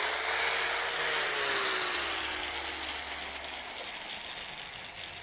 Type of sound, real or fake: real